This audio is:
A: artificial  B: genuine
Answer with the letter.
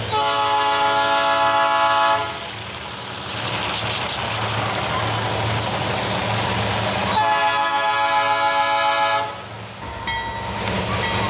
B